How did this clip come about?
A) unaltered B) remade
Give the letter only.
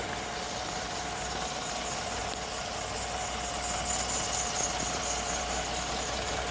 A